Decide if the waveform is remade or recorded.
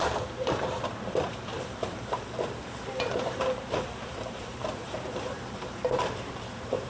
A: remade